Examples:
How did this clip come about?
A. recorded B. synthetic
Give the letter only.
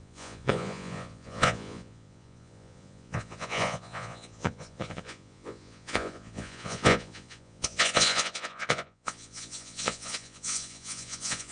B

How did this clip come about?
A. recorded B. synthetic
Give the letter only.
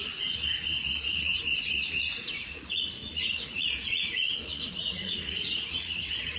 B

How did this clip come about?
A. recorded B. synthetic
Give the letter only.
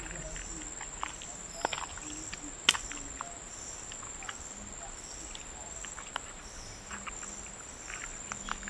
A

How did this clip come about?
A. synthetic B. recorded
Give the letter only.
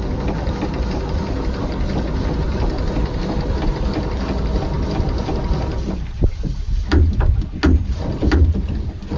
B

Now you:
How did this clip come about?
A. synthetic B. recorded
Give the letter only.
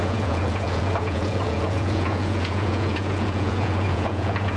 A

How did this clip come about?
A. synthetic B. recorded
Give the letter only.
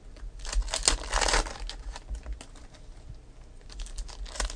B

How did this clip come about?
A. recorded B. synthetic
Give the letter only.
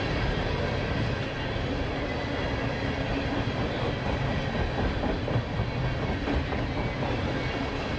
A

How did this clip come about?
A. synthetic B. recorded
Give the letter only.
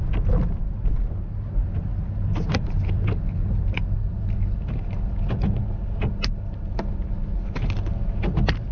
B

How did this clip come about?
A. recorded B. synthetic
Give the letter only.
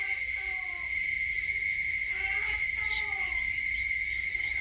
A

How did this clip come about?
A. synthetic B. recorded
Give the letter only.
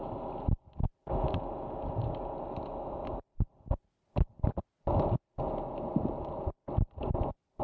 B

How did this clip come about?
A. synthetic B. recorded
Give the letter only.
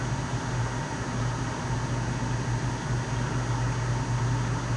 B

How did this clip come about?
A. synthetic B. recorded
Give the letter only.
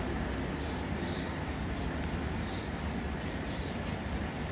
B